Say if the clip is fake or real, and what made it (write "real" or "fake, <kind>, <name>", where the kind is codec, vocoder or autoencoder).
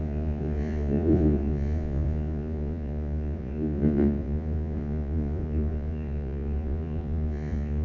fake, vocoder, Vocos